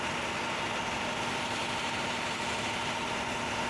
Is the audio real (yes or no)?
yes